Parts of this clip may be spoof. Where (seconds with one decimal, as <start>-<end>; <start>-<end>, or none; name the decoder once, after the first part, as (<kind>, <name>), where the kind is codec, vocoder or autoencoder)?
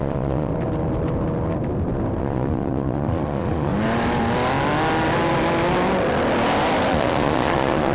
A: 0.0-0.5 (vocoder, Vocos); 2.2-3.7; 6.9-7.9